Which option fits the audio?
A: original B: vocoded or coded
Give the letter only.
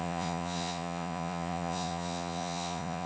B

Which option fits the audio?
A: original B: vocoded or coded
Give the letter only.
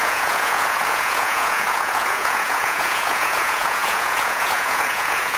B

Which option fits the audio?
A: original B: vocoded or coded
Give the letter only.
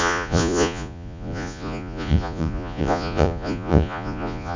B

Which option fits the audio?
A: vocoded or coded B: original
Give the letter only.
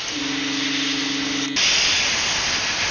B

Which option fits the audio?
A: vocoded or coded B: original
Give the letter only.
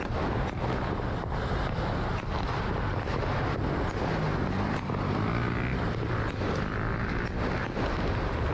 B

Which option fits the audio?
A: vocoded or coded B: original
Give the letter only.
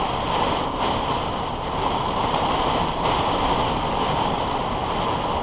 B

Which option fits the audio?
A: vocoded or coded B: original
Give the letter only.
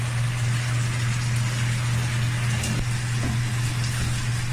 B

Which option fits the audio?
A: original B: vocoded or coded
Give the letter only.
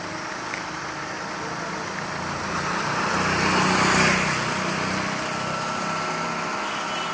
A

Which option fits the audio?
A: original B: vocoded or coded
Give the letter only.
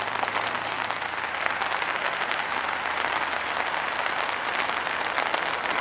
A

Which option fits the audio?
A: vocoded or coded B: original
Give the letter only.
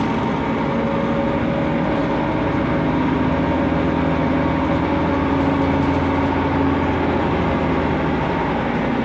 B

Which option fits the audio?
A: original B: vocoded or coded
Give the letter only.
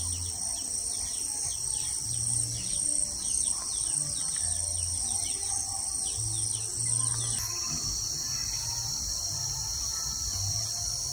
A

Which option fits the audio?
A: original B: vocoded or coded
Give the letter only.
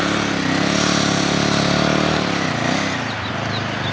A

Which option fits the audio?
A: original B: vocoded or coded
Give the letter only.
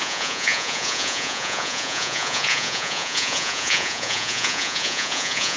B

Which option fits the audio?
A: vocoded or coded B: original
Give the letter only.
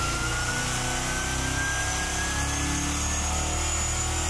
B